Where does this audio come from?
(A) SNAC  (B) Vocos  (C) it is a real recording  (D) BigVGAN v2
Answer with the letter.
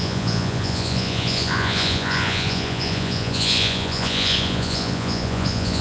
B